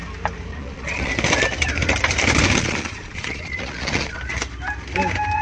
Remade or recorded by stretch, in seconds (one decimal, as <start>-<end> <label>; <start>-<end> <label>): 0.0-0.5 recorded; 0.5-1.1 remade; 1.1-2.6 recorded; 2.6-4.2 remade; 4.2-5.4 recorded